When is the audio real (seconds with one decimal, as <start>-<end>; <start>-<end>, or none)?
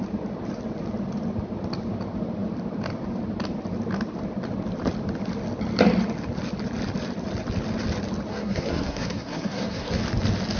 0.0-8.3; 10.0-10.6